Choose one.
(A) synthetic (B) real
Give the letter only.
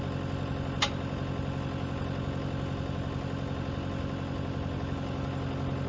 B